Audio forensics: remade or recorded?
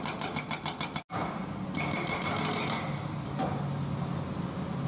recorded